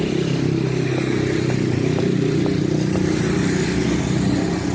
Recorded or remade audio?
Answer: recorded